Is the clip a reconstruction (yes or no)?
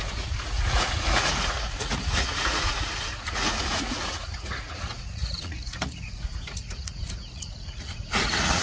yes